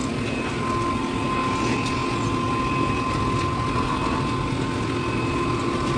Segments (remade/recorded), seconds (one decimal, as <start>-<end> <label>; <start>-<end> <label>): 0.0-6.0 recorded